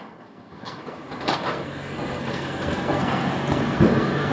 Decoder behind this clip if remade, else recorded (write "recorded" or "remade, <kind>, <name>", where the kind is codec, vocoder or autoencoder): remade, codec, SNAC